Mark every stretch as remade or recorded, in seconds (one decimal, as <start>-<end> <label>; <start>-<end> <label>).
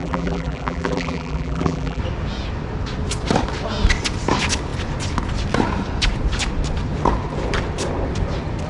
0.0-2.0 remade; 2.0-8.7 recorded